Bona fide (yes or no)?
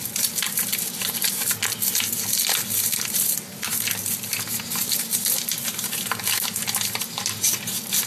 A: yes